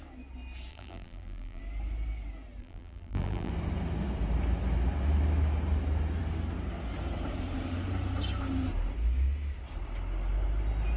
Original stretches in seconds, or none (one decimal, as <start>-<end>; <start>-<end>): 0.0-0.7; 1.6-2.6; 3.5-11.0